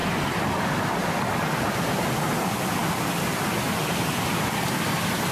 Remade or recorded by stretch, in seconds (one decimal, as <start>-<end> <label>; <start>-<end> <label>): 0.0-5.3 recorded

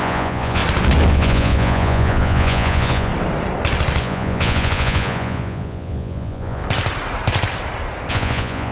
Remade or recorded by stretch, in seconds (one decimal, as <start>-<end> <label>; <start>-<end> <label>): 0.0-0.6 remade; 0.6-1.1 recorded; 1.1-3.1 remade; 3.1-4.0 recorded; 4.0-6.6 remade; 6.6-8.1 recorded; 8.1-8.7 remade